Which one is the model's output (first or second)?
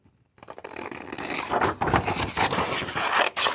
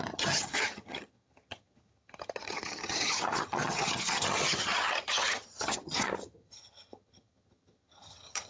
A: second